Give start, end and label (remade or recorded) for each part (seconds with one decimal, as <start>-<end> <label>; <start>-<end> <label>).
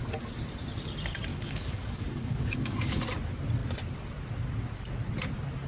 0.0-1.3 recorded; 1.3-3.0 remade; 3.0-5.7 recorded